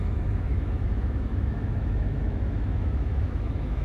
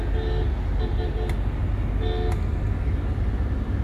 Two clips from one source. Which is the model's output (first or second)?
first